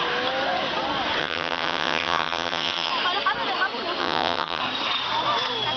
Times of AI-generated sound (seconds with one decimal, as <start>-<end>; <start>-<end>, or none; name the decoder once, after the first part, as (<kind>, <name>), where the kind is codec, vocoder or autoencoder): 1.2-2.9 (vocoder, HiFi-GAN); 4.0-4.6